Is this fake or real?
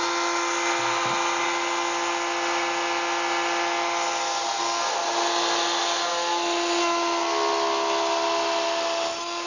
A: real